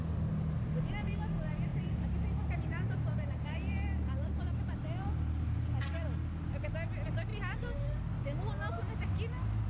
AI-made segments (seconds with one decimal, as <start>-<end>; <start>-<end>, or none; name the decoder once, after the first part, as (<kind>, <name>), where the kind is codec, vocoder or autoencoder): 1.7-5.1 (vocoder, BigVGAN v2); 7.3-8.0